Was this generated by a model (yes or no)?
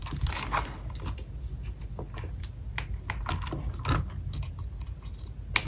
no